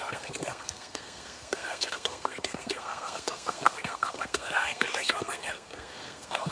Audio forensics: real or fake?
fake